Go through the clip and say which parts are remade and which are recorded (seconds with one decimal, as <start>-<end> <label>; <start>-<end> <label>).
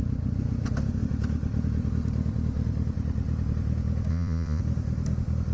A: 0.0-4.1 recorded; 4.1-4.6 remade; 4.6-5.5 recorded